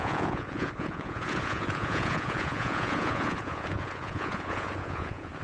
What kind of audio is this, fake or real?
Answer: fake